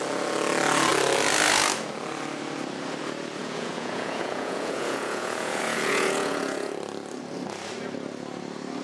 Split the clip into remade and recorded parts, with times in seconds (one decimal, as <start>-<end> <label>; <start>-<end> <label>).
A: 0.0-3.4 recorded; 3.4-6.7 remade; 6.7-8.8 recorded